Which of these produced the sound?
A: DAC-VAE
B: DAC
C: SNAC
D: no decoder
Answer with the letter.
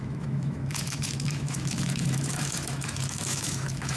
A